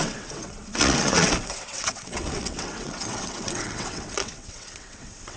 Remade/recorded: remade